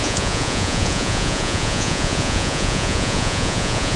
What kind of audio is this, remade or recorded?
remade